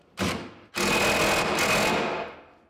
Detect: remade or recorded recorded